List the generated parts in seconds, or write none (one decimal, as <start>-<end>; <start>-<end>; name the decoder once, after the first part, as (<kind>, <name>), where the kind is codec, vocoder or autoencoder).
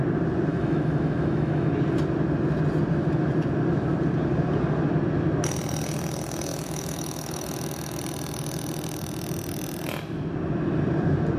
0.5-1.7 (autoencoder, DAC-VAE); 6.5-8.0